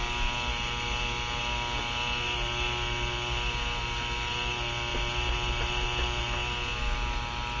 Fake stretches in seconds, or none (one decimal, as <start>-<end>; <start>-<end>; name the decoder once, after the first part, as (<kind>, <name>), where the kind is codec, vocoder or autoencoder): none